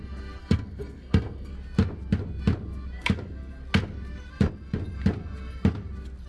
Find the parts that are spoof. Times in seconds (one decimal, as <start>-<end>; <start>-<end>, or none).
0.4-1.5